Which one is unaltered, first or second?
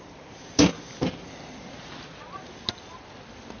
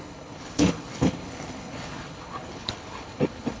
first